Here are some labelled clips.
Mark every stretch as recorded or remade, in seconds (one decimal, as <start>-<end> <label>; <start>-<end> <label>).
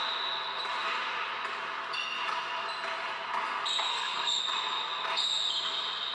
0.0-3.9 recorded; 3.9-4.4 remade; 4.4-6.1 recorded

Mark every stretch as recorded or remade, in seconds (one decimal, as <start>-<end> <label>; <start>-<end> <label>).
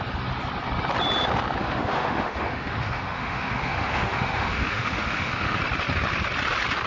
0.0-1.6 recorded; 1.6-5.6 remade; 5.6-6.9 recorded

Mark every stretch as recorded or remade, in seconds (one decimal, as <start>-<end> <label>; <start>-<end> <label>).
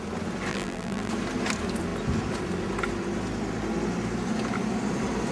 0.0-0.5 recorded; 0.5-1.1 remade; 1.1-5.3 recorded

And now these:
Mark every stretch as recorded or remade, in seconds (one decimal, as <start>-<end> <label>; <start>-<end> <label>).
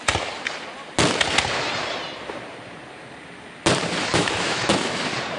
0.0-4.1 recorded; 4.1-5.0 remade; 5.0-5.4 recorded